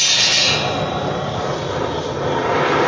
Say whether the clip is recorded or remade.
recorded